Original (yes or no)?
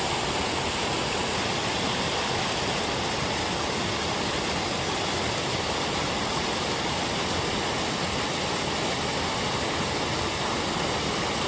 yes